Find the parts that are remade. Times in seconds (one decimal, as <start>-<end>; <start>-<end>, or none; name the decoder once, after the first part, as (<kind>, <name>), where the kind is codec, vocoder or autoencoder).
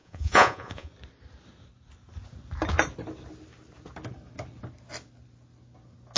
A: 0.0-0.9 (vocoder, Vocos)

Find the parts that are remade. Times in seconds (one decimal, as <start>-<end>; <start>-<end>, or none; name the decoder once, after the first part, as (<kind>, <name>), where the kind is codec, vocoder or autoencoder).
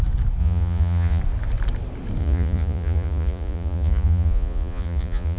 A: 0.4-1.2 (vocoder, Vocos); 2.2-5.4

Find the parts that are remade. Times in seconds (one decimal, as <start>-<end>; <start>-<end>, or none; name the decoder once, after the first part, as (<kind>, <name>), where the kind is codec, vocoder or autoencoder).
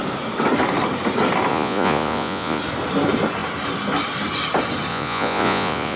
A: 1.5-2.6 (vocoder, Vocos); 4.9-6.0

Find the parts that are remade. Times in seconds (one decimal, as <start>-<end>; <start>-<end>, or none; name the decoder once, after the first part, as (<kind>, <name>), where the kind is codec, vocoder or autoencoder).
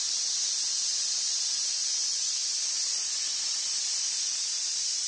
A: none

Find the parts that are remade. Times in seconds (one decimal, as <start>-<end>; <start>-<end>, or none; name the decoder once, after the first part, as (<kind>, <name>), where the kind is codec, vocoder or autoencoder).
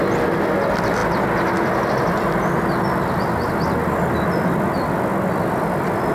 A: none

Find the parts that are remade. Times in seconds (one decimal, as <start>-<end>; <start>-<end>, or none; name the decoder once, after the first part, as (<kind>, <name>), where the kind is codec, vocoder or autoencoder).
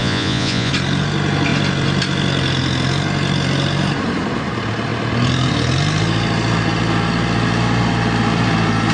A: 0.0-0.7 (vocoder, Vocos)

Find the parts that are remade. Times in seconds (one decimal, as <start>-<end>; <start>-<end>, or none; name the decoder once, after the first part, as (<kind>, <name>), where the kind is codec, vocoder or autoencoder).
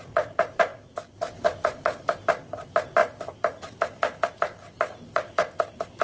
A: none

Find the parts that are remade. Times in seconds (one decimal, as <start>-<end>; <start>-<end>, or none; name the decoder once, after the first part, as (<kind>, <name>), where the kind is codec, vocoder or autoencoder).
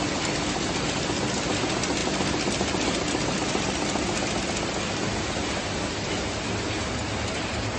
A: none